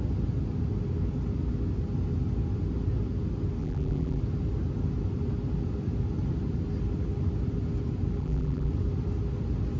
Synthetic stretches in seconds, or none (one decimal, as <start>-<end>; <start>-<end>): 3.6-4.2; 8.2-8.7